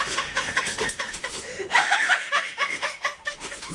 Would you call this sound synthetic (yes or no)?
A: yes